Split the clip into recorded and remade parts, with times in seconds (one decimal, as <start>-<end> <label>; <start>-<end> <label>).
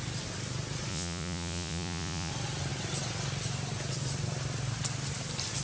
0.0-0.9 recorded; 0.9-2.3 remade; 2.3-5.6 recorded